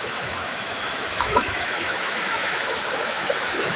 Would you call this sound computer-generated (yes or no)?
yes